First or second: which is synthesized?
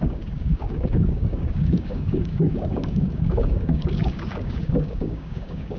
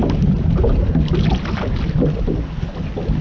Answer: first